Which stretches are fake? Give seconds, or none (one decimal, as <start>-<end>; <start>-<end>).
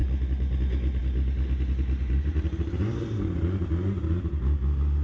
none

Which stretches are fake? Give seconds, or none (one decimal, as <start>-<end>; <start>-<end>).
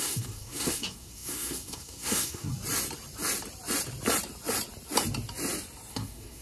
0.0-2.5; 5.9-6.4